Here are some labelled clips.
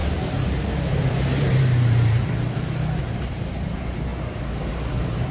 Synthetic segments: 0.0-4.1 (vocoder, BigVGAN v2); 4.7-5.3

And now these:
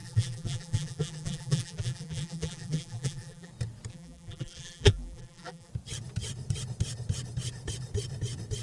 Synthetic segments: 0.0-3.5 (vocoder, BigVGAN v2); 3.9-5.7

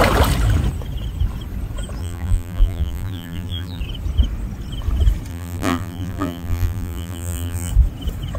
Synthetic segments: 2.0-3.8 (vocoder, BigVGAN v2); 5.3-7.7